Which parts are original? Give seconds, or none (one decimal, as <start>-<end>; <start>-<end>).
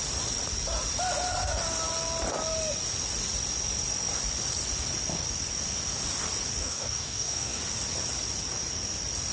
0.0-6.6; 7.6-9.3